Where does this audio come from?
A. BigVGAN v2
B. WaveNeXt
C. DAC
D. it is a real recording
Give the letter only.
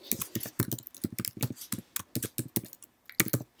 D